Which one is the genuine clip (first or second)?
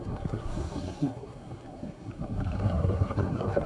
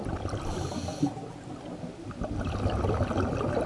second